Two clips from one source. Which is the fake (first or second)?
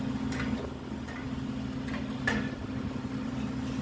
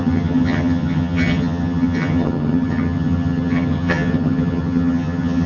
second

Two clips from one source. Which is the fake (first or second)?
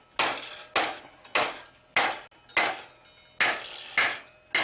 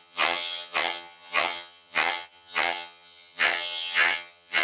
second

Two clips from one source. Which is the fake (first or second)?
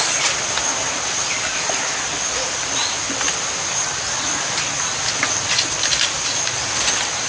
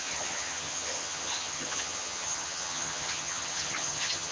second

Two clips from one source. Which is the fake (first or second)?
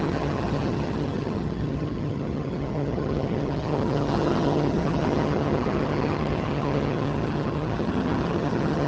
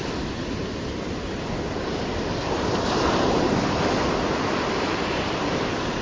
first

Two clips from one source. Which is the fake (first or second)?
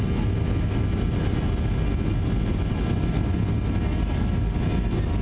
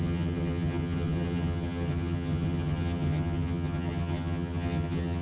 second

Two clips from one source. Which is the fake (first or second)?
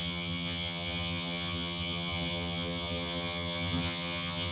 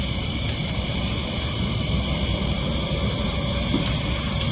first